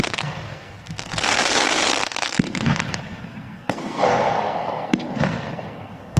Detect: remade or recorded remade